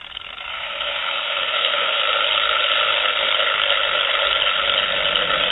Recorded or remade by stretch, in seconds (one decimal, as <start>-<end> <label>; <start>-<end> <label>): 0.0-0.5 recorded; 0.5-2.0 remade; 2.0-5.5 recorded